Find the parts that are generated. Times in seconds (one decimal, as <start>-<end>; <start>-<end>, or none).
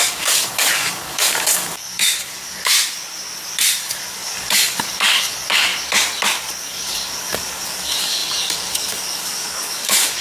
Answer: 0.0-2.7; 3.8-5.7; 6.6-10.2